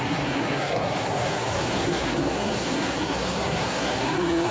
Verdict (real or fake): fake